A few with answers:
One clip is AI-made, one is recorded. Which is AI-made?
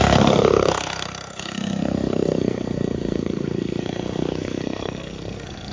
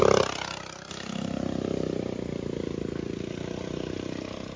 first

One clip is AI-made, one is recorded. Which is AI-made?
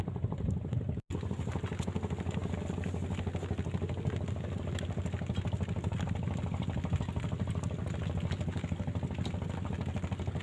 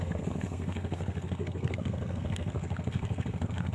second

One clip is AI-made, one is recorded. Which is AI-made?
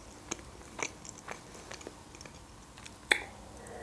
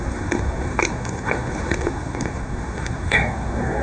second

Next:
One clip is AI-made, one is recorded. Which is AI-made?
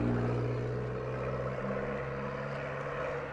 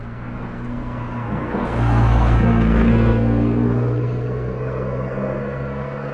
second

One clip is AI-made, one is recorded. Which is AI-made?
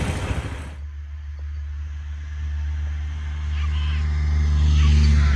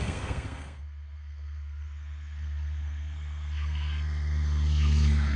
second